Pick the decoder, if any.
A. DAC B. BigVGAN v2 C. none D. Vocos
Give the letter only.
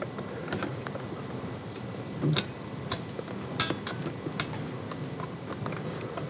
C